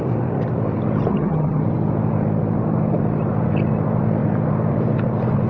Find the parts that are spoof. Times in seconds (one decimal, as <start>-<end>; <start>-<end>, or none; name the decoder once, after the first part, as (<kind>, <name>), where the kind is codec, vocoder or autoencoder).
1.1-1.6 (vocoder, HiFi-GAN)